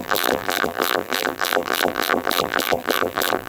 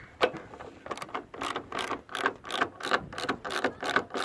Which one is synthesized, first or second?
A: first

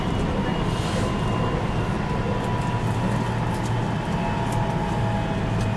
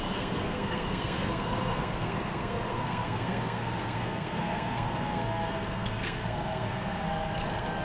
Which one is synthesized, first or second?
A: second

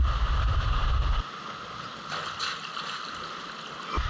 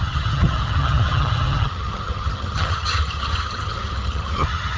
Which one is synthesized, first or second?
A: second